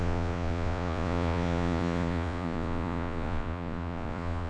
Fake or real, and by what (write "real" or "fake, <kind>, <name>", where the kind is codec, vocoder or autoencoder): fake, vocoder, Vocos